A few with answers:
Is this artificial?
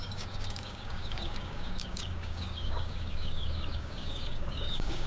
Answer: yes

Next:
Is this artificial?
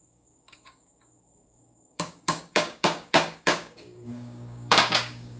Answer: yes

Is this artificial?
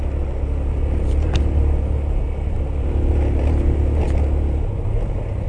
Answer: no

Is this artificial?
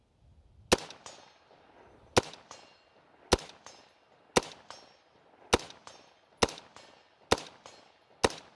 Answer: no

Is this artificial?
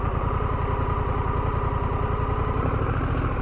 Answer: no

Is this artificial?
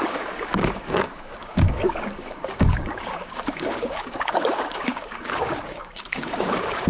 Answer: yes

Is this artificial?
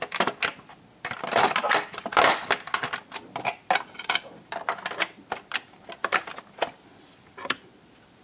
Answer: no